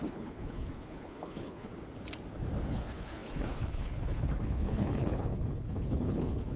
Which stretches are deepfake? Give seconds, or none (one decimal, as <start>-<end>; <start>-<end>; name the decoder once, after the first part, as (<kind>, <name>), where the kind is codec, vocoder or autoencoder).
0.0-1.7 (codec, HILCodec); 2.7-6.6